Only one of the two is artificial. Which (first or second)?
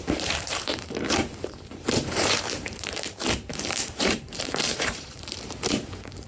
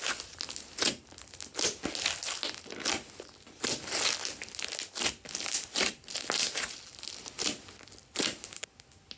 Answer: first